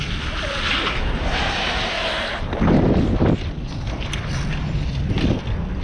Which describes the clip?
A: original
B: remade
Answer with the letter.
A